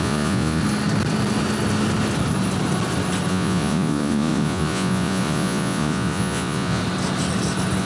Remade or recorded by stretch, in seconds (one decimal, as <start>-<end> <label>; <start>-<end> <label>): 0.0-0.6 remade; 0.6-3.3 recorded; 3.3-6.8 remade; 6.8-7.8 recorded